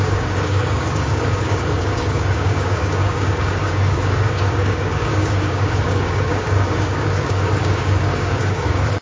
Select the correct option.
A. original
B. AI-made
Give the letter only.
B